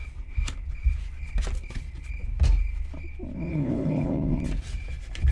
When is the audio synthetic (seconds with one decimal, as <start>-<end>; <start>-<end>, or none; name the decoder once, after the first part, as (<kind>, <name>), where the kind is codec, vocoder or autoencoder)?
3.5-4.4 (codec, HILCodec)